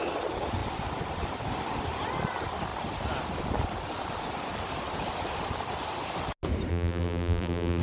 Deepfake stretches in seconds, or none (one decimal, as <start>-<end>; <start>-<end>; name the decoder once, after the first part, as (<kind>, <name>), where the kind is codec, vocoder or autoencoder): 6.7-7.8 (vocoder, BigVGAN v2)